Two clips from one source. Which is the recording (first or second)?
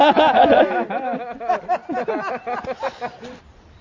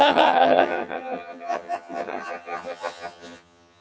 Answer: first